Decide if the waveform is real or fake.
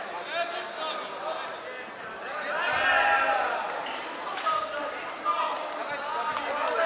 real